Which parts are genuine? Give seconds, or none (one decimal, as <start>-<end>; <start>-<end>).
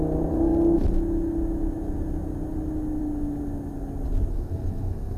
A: 0.0-4.3